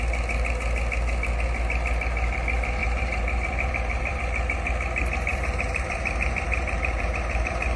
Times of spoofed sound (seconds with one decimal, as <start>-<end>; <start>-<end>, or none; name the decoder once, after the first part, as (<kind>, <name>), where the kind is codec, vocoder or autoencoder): 2.8-4.2 (vocoder, BigVGAN v2); 5.3-7.8